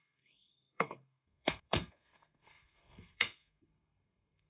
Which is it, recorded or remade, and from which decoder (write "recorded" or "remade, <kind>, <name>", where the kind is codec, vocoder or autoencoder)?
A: remade, codec, SNAC